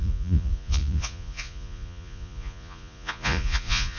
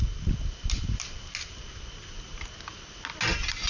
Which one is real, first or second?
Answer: second